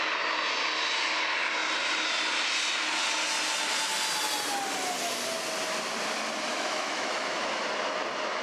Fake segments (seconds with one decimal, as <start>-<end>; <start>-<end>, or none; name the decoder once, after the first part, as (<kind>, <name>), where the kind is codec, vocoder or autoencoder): 6.5-7.6 (autoencoder, DAC-VAE)